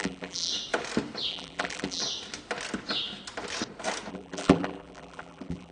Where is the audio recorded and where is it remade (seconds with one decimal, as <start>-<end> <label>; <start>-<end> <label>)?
0.0-0.5 remade; 0.5-1.3 recorded; 1.3-2.0 remade; 2.0-4.1 recorded; 4.1-5.7 remade

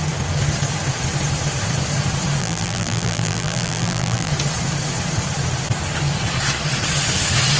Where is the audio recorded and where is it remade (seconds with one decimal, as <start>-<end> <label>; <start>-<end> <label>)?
0.0-2.4 recorded; 2.4-4.3 remade; 4.3-7.6 recorded

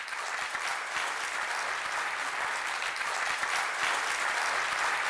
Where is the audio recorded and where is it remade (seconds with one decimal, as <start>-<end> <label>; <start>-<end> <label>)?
0.0-5.1 recorded

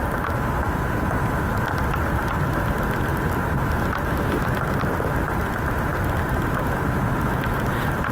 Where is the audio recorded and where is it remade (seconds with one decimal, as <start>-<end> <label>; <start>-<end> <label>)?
0.0-8.1 recorded

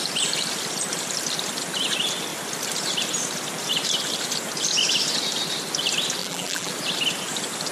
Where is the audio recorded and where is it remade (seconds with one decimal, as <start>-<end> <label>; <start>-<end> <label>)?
0.0-6.2 recorded; 6.2-6.7 remade; 6.7-7.7 recorded

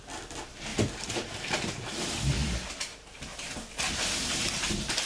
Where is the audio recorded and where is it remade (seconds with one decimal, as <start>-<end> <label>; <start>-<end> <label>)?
0.0-0.7 recorded; 0.7-1.9 remade; 1.9-3.3 recorded; 3.3-4.0 remade; 4.0-5.1 recorded

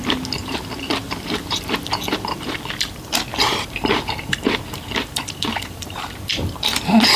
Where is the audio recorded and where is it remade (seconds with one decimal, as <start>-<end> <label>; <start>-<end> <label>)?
0.0-0.4 recorded; 0.4-1.6 remade; 1.6-3.3 recorded; 3.3-6.2 remade; 6.2-7.2 recorded

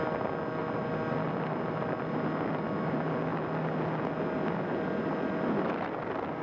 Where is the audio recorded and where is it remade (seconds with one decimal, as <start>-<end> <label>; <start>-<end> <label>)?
0.0-6.4 recorded